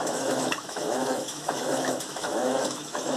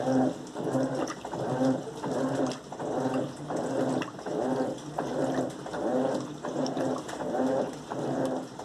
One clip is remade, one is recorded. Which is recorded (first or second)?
second